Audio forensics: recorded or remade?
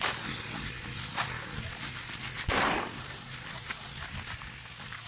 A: recorded